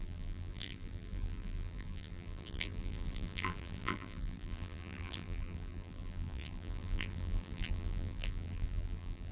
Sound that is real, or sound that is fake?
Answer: fake